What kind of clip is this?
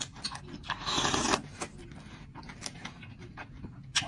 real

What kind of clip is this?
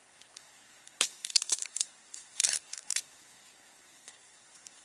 fake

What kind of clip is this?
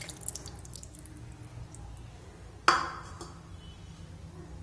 real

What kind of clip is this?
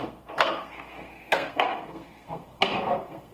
fake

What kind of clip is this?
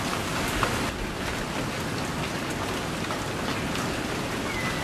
real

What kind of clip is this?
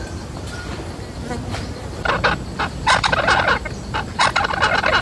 real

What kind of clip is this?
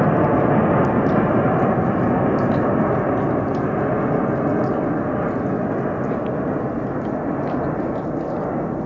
real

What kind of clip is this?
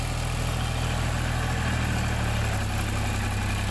real